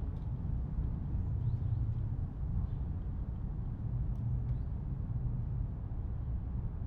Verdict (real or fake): real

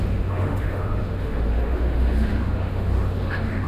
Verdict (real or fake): fake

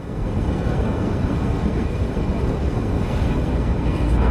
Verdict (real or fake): fake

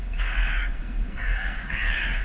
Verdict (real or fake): fake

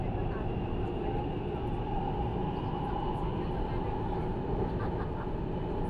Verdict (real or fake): real